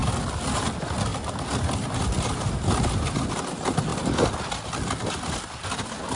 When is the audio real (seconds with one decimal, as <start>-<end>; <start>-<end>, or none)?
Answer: 0.0-6.2

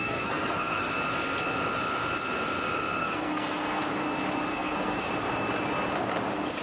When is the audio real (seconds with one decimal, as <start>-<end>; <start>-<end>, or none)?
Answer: 0.9-3.0; 3.8-4.5; 5.1-6.6

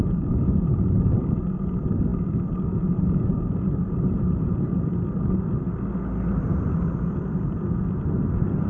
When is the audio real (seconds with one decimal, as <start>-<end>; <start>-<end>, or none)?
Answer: 0.0-8.7

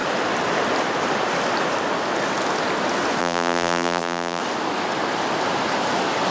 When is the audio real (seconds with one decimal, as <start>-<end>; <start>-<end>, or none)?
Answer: 0.0-3.2; 4.4-6.3

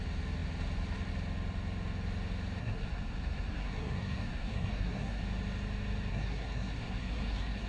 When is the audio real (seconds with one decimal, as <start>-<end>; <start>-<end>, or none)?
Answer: 0.0-2.6; 5.2-6.1

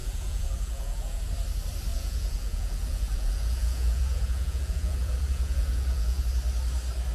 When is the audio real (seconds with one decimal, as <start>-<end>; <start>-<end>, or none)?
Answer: 1.2-1.9; 6.2-7.1

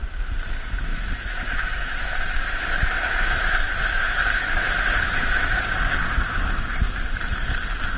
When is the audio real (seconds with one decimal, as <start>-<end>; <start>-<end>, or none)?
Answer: 0.0-0.9; 5.6-6.7; 7.4-8.0